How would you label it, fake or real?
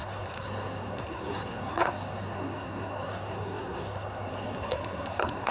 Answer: fake